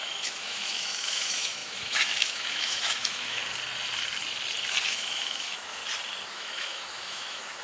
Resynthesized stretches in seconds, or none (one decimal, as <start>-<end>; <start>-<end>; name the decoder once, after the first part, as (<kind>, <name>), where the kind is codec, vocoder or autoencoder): 0.0-3.4 (autoencoder, DAC-VAE); 4.8-5.8; 6.3-7.6